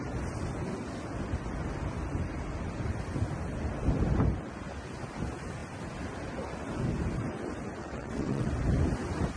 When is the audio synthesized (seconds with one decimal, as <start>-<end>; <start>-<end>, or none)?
7.8-8.5